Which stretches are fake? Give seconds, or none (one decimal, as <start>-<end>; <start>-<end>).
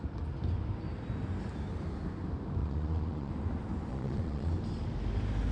2.6-3.3; 3.9-4.5